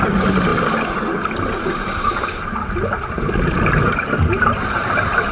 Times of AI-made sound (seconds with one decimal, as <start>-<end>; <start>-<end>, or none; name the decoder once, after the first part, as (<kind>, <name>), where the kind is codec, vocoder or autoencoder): none